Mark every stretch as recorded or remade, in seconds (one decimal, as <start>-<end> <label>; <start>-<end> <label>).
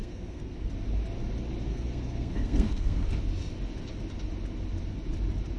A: 0.0-0.7 remade; 0.7-1.7 recorded; 1.7-3.2 remade; 3.2-5.6 recorded